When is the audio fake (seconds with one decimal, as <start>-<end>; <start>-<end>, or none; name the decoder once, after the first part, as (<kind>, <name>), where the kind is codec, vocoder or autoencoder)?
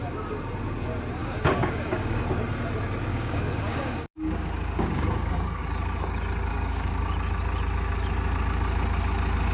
1.2-2.2 (codec, DAC); 3.1-5.6; 6.5-7.0